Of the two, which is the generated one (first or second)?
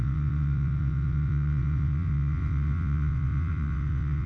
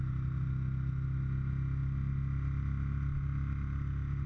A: first